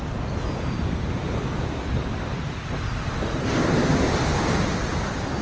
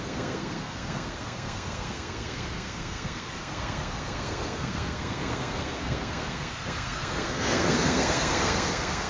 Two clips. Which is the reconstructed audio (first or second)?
second